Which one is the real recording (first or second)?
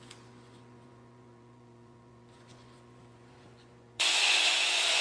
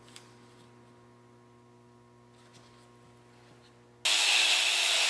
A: second